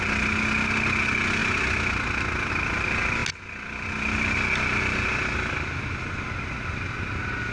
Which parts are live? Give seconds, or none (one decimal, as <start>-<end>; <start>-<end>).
0.0-7.5